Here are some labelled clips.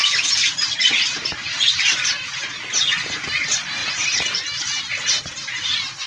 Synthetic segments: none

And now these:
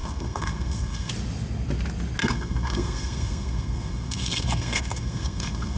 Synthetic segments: 0.0-1.1; 2.2-5.8

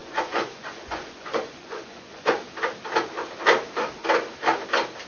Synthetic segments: 0.0-2.3

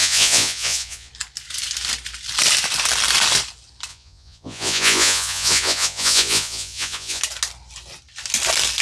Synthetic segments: 0.0-1.1; 3.9-7.2

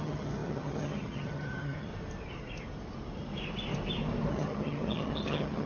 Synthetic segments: 0.0-1.9; 4.3-5.7

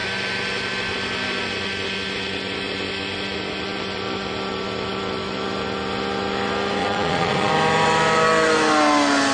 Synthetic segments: 6.8-7.5

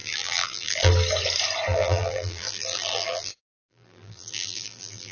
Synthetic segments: 0.0-0.9; 1.7-5.1

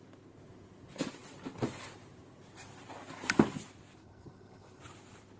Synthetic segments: 4.0-4.8